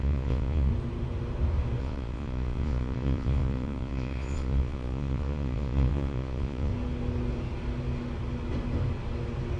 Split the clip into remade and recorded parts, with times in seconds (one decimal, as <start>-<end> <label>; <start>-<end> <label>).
0.0-0.7 remade; 0.7-1.8 recorded; 1.8-6.7 remade; 6.7-9.6 recorded